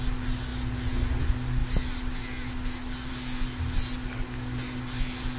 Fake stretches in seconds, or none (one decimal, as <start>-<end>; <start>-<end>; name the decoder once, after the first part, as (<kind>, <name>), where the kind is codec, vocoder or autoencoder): none